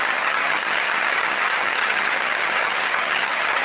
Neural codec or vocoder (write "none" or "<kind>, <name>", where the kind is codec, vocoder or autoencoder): vocoder, HiFi-GAN